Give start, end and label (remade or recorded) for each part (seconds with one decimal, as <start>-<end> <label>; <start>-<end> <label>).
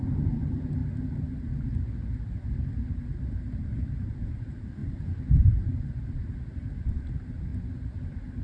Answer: 0.0-0.8 remade; 0.8-2.9 recorded; 2.9-4.8 remade; 4.8-5.4 recorded; 5.4-7.5 remade; 7.5-8.4 recorded